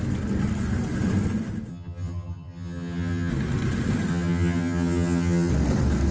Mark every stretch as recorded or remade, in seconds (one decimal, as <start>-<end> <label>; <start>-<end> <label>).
0.0-1.7 recorded; 1.7-3.3 remade; 3.3-4.1 recorded; 4.1-5.5 remade; 5.5-6.1 recorded